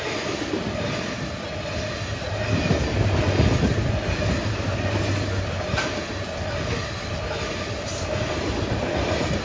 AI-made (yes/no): no